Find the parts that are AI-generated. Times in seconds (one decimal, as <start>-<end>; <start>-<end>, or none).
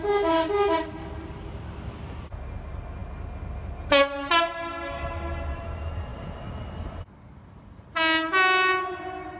none